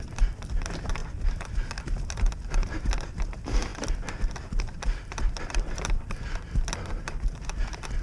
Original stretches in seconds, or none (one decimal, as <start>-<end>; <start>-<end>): 1.0-2.3